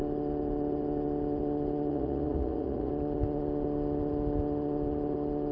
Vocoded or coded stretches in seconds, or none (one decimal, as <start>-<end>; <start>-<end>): 1.9-2.9